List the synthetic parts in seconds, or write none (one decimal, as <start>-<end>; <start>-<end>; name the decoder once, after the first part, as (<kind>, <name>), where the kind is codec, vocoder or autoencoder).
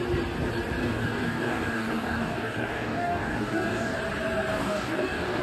0.8-4.0 (codec, DAC); 4.5-5.4